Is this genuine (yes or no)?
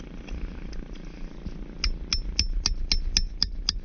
yes